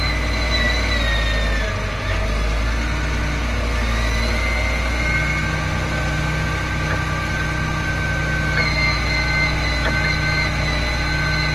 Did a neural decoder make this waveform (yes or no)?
no